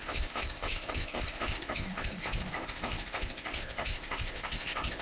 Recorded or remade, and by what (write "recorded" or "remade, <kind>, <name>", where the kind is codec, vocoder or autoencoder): remade, codec, ZipCodec